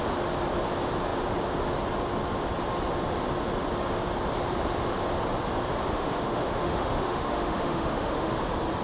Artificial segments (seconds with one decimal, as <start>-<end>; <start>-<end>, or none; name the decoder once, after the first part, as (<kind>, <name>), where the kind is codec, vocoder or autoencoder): 5.9-8.4 (autoencoder, DAC-VAE)

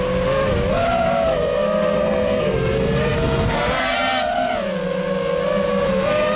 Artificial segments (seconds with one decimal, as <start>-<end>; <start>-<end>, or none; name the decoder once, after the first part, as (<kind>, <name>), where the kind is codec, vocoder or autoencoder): 0.7-4.5 (codec, SNAC); 5.7-6.4

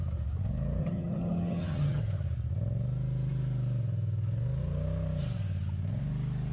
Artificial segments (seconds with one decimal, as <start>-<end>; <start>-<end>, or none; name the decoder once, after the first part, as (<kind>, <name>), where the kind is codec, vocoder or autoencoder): 0.8-2.0 (vocoder, HiFi-GAN)

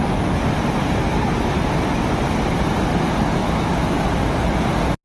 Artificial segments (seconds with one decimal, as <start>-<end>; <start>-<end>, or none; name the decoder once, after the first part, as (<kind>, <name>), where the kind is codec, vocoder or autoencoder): 3.4-4.4 (autoencoder, DAC-VAE)